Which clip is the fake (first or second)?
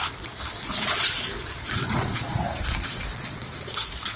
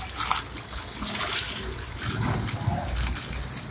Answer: first